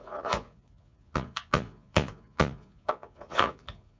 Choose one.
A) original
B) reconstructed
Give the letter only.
B